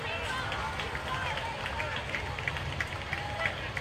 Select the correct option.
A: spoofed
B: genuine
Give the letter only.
B